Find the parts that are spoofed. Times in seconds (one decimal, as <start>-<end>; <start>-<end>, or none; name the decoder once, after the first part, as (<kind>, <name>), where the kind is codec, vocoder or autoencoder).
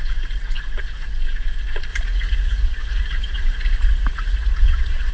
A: 1.9-5.1 (vocoder, Vocos)